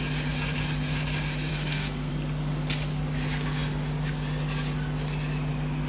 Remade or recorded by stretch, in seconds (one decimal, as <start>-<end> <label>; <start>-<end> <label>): 0.0-1.5 recorded; 1.5-2.1 remade; 2.1-5.9 recorded